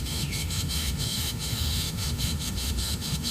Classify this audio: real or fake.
fake